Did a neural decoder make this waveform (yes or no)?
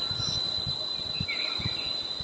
no